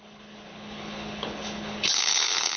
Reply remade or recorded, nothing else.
remade